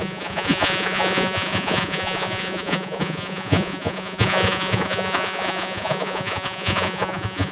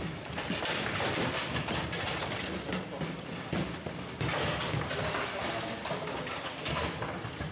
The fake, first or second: first